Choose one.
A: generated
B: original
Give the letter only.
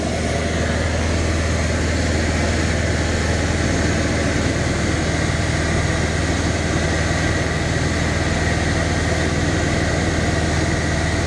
B